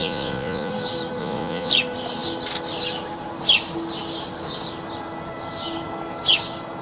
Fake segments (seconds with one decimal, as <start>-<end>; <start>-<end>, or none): 0.0-0.7; 1.2-1.7

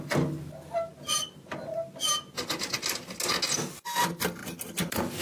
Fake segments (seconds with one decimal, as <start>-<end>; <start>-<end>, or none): none